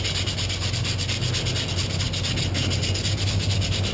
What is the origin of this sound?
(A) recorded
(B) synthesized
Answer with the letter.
A